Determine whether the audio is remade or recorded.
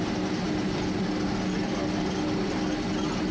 recorded